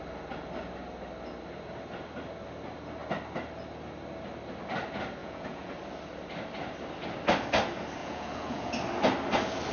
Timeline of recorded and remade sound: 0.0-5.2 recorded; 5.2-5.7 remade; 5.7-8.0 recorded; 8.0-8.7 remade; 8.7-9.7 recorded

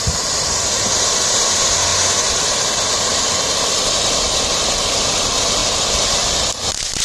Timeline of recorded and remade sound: 0.0-7.0 recorded

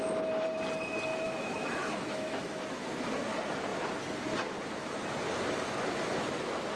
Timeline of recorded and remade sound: 0.0-1.1 recorded; 1.1-2.7 remade; 2.7-6.8 recorded

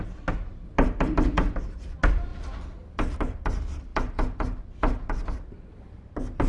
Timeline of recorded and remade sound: 0.0-6.5 recorded

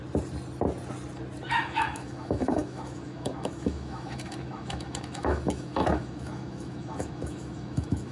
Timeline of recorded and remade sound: 0.0-1.5 recorded; 1.5-8.1 remade

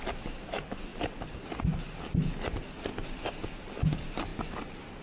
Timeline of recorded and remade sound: 0.0-0.9 remade; 0.9-3.9 recorded; 3.9-5.0 remade

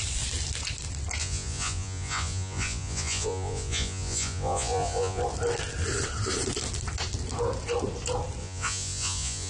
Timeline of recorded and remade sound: 0.0-1.2 recorded; 1.2-5.2 remade; 5.2-8.4 recorded; 8.4-9.5 remade

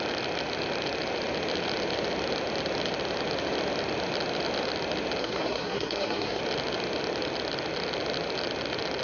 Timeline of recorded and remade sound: 0.0-5.2 recorded; 5.2-6.4 remade; 6.4-9.0 recorded